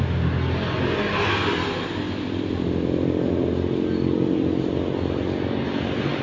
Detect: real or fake real